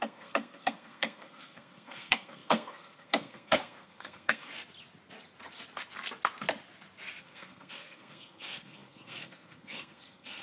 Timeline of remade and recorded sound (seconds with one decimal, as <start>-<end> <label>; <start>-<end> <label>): 0.0-4.5 remade; 4.5-7.2 recorded; 7.2-10.4 remade